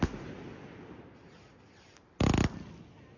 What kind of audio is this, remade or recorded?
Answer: recorded